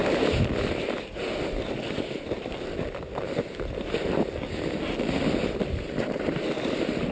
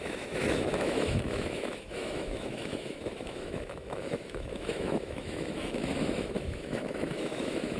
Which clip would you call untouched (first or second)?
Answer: first